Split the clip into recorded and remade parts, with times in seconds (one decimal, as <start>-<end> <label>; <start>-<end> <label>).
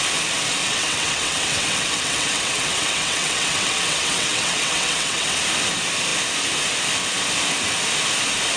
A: 0.0-0.6 recorded; 0.6-5.4 remade; 5.4-8.6 recorded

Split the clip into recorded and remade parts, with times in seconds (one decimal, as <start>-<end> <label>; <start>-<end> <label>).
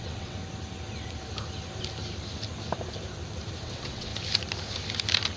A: 0.0-0.4 remade; 0.4-3.6 recorded; 3.6-4.1 remade; 4.1-5.4 recorded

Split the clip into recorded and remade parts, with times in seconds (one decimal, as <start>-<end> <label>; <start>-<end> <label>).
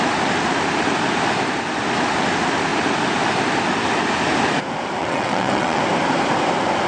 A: 0.0-5.0 recorded; 5.0-5.8 remade; 5.8-6.9 recorded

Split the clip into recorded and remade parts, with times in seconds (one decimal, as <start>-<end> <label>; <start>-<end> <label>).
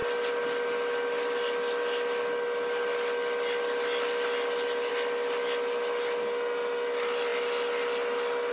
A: 0.0-8.5 recorded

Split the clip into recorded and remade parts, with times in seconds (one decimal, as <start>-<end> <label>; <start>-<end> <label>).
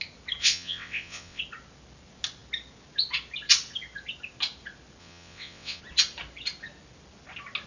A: 0.0-0.4 recorded; 0.4-1.4 remade; 1.4-5.0 recorded; 5.0-5.8 remade; 5.8-7.7 recorded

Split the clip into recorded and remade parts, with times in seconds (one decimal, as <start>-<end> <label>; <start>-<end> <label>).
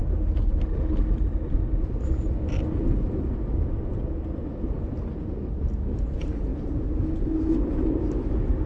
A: 0.0-8.7 recorded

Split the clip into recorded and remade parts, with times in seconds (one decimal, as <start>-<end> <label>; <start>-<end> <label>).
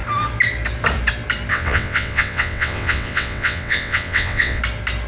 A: 0.0-1.5 recorded; 1.5-4.6 remade; 4.6-5.1 recorded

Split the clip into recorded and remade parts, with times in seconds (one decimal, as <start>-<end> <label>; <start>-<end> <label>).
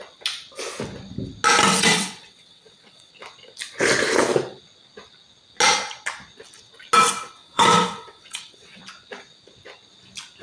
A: 0.0-1.7 recorded; 1.7-3.1 remade; 3.1-7.4 recorded; 7.4-8.8 remade; 8.8-10.4 recorded